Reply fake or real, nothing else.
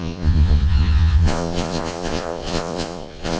fake